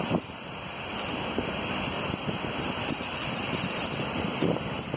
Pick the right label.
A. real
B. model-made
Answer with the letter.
A